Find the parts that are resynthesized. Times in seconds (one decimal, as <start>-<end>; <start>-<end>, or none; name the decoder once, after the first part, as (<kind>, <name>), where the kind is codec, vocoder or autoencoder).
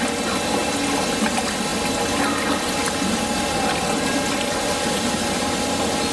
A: none